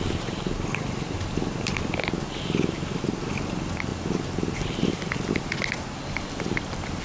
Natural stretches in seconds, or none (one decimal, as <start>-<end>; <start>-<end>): 0.0-7.0